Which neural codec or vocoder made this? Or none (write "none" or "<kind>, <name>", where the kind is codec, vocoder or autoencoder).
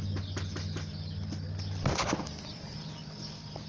none